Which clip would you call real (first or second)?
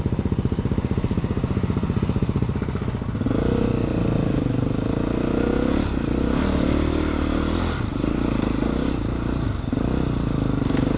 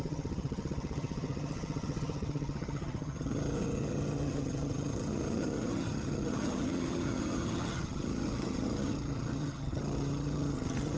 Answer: first